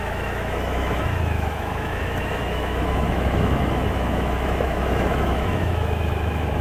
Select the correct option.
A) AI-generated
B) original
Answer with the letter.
A